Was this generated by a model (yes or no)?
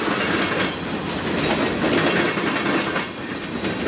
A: no